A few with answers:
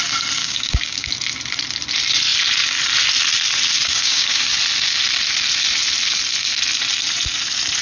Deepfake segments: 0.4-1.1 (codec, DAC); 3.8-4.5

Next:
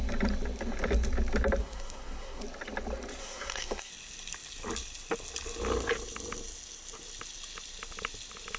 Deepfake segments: 1.6-2.4 (codec, SNAC); 3.2-3.9

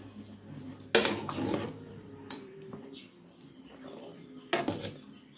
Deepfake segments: 1.0-4.2 (vocoder, BigVGAN v2)